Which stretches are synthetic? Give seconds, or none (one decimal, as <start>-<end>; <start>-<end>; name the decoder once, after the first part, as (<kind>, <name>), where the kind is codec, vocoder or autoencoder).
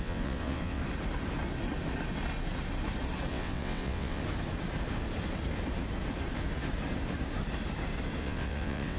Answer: 0.0-0.8 (vocoder, WaveNeXt); 3.3-4.2; 8.2-9.0